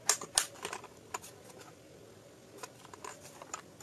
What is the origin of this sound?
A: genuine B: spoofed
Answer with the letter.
A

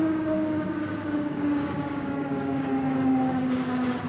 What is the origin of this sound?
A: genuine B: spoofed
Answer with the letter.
B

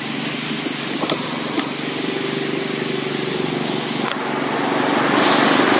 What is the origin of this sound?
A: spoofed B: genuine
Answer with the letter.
B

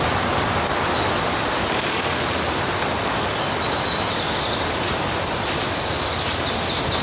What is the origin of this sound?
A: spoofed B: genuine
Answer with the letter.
B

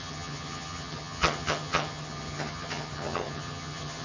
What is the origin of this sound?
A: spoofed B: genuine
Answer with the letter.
A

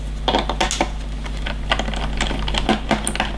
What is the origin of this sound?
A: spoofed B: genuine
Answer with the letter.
B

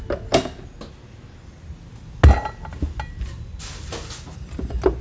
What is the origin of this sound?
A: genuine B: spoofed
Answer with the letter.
A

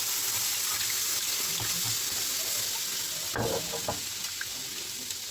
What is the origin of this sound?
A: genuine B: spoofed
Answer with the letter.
A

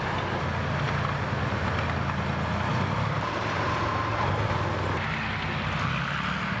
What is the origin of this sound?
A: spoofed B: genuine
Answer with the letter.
B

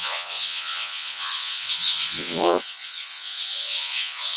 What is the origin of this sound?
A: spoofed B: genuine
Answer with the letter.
A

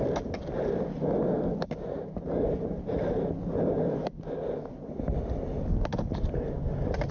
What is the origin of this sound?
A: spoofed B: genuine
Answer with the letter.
B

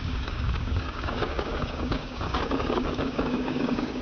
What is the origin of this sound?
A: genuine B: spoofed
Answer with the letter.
B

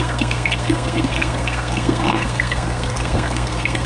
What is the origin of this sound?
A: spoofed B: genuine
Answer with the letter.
A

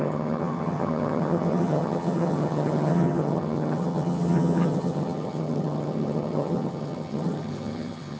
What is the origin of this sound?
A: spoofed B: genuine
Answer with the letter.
A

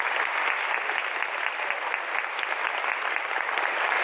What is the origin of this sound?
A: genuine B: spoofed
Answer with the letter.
A